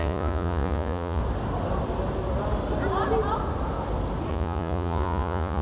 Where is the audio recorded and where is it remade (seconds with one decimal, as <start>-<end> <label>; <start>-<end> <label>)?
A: 0.0-1.2 remade; 1.2-4.3 recorded; 4.3-5.6 remade